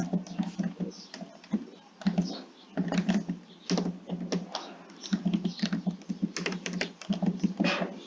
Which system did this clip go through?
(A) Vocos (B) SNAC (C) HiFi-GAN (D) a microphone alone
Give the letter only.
D